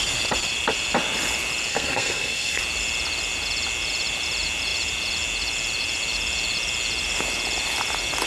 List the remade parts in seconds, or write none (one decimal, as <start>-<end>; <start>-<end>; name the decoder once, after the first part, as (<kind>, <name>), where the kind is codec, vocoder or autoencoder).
1.7-2.6 (codec, SNAC)